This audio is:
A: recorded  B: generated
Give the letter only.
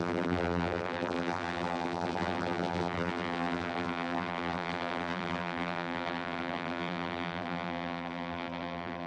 B